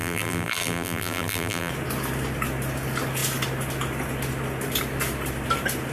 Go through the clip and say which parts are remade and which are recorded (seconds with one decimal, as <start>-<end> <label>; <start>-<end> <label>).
0.0-1.7 remade; 1.7-5.9 recorded